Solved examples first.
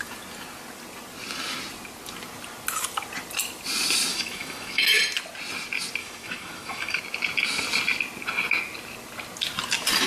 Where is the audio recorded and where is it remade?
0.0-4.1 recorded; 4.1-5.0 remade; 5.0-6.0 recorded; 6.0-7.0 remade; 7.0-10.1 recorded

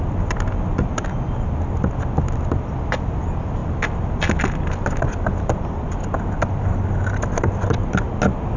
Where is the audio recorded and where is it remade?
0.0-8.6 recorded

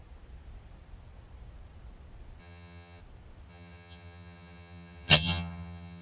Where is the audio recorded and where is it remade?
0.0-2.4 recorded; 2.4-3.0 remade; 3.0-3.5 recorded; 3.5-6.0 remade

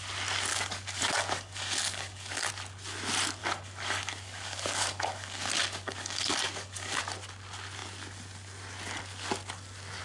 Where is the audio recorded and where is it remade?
0.0-0.5 recorded; 0.5-2.5 remade; 2.5-3.4 recorded; 3.4-7.0 remade; 7.0-10.0 recorded

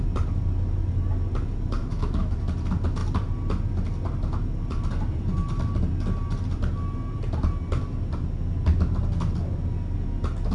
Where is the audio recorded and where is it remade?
0.0-1.8 recorded; 1.8-2.3 remade; 2.3-10.5 recorded